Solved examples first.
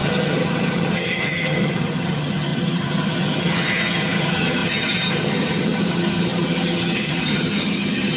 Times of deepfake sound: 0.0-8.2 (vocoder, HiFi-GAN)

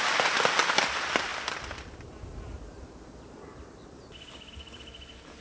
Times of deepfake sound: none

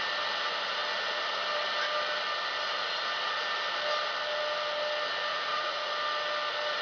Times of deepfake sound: 5.3-5.9 (vocoder, Vocos)